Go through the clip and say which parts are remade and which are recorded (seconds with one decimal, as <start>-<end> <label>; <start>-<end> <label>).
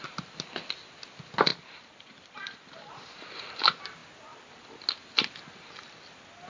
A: 0.0-1.5 recorded; 1.5-2.9 remade; 2.9-6.5 recorded